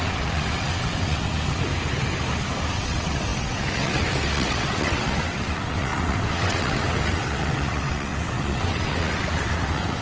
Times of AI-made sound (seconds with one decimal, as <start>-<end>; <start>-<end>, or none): 0.0-1.7; 2.7-10.0